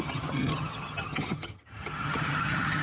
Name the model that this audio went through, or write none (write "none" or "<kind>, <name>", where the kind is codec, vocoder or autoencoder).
vocoder, HiFi-GAN